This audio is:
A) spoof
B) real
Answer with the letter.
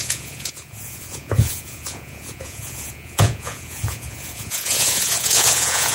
A